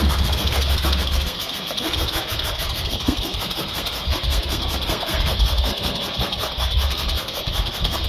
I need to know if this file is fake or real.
fake